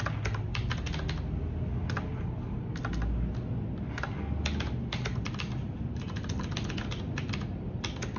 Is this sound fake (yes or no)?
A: no